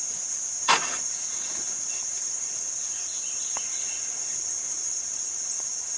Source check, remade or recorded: remade